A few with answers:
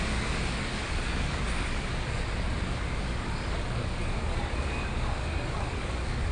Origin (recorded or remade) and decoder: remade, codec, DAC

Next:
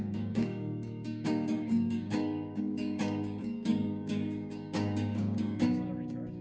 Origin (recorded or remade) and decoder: remade, codec, DAC